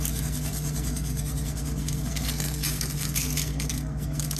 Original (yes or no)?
no